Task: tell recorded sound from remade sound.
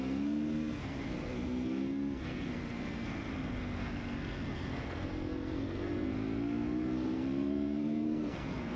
remade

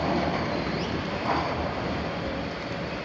recorded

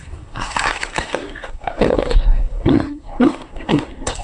remade